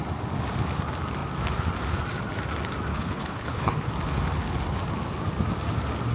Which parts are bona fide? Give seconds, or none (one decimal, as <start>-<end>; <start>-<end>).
0.0-2.9; 3.9-6.1